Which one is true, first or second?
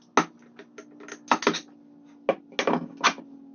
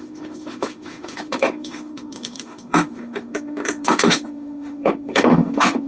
first